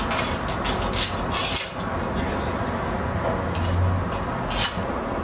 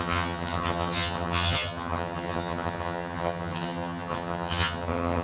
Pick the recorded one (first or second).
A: first